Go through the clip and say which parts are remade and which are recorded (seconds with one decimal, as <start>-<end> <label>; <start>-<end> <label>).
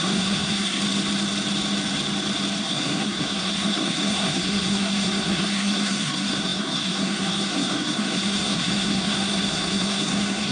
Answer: 0.0-0.8 remade; 0.8-2.6 recorded; 2.6-10.5 remade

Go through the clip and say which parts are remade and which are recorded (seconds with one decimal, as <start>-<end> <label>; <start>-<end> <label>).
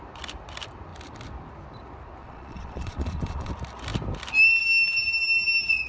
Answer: 0.0-2.2 recorded; 2.2-3.5 remade; 3.5-5.9 recorded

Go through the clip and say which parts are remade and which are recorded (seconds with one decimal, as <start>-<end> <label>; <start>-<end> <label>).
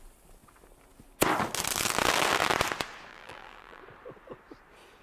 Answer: 0.0-3.1 recorded; 3.1-3.8 remade; 3.8-5.0 recorded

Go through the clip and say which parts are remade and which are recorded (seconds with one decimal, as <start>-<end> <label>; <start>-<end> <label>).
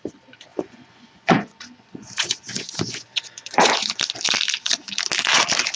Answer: 0.0-0.5 recorded; 0.5-4.0 remade; 4.0-5.8 recorded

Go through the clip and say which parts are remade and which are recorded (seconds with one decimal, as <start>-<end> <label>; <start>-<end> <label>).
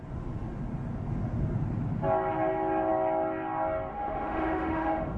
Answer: 0.0-3.9 recorded; 3.9-5.2 remade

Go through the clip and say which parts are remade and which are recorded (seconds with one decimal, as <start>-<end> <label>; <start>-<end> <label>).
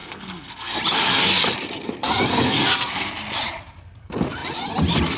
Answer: 0.0-0.8 remade; 0.8-2.3 recorded; 2.3-3.1 remade; 3.1-5.2 recorded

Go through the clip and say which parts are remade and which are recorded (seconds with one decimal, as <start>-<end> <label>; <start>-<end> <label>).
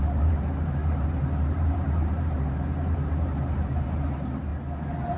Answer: 0.0-4.5 remade; 4.5-5.2 recorded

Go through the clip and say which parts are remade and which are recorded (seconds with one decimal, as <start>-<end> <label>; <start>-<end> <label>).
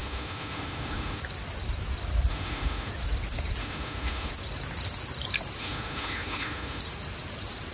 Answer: 0.0-1.2 remade; 1.2-2.3 recorded; 2.3-2.9 remade; 2.9-3.6 recorded; 3.6-4.3 remade; 4.3-5.6 recorded; 5.6-6.8 remade; 6.8-7.7 recorded